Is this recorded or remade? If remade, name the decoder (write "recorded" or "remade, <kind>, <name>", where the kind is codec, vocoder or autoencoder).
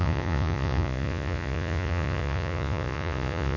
remade, vocoder, Vocos